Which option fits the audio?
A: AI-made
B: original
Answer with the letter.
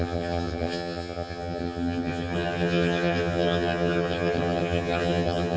A